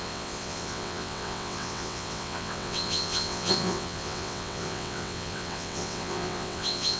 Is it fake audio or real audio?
fake